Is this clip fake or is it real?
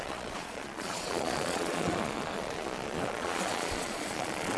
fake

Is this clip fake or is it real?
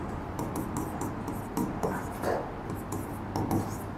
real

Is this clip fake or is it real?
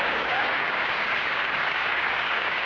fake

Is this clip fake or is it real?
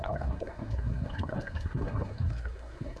fake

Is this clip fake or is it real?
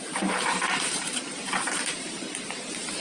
fake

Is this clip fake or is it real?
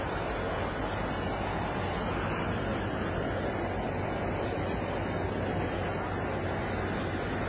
real